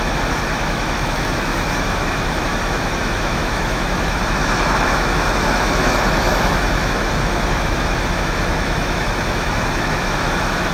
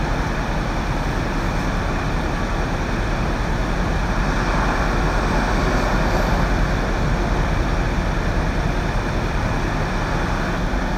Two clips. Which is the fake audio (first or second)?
first